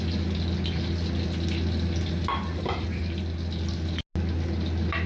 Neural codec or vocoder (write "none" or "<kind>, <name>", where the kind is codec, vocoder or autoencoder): none